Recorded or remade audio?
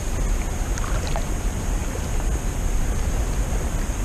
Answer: recorded